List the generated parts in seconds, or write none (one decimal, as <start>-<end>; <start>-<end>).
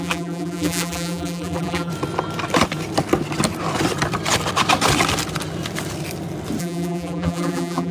0.0-1.9; 6.6-7.9